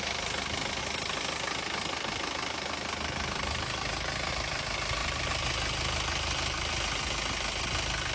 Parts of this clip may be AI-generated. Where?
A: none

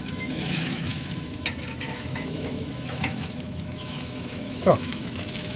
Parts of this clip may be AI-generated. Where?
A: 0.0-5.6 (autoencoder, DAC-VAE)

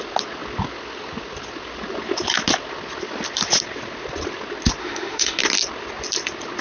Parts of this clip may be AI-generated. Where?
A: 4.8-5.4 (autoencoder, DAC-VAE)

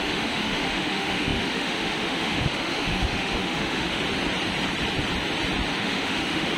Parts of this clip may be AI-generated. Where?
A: 0.0-4.0 (autoencoder, DAC-VAE); 5.8-6.6